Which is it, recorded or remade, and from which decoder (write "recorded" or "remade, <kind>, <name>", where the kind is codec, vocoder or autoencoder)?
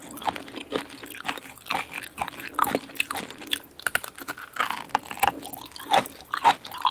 recorded